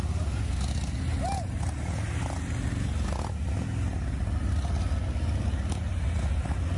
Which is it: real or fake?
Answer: real